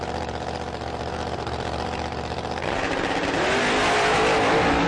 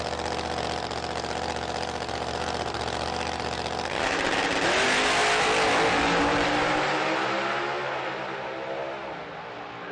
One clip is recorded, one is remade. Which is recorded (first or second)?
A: second